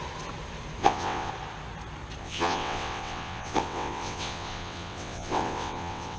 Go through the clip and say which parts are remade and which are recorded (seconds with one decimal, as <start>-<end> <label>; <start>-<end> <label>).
0.0-0.8 recorded; 0.8-1.3 remade; 1.3-2.2 recorded; 2.2-6.2 remade